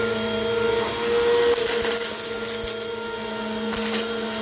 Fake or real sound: real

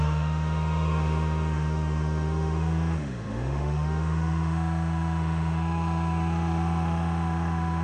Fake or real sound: fake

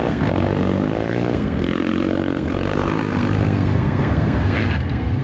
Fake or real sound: fake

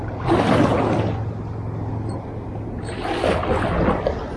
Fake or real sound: real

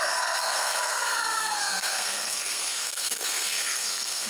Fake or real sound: fake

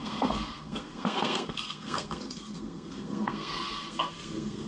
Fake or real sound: fake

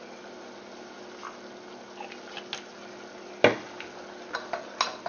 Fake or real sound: real